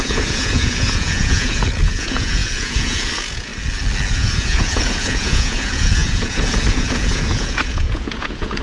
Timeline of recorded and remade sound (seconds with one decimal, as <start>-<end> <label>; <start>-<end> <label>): 0.0-3.5 remade; 3.5-4.1 recorded; 4.1-8.6 remade